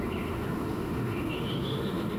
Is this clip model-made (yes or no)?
yes